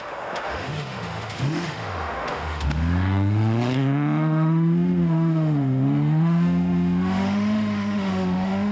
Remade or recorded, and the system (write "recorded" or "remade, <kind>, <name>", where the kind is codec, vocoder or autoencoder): remade, autoencoder, DAC-VAE